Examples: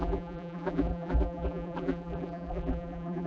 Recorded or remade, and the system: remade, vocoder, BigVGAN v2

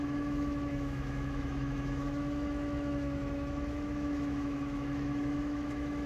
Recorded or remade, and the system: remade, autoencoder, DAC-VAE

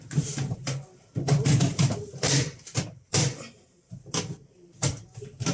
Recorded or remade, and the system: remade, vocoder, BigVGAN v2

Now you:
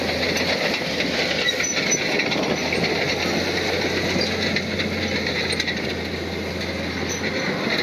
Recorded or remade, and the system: recorded